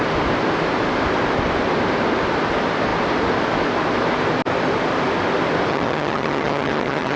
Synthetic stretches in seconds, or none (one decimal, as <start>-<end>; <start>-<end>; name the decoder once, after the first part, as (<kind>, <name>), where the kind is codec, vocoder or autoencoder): 5.7-7.2 (vocoder, HiFi-GAN)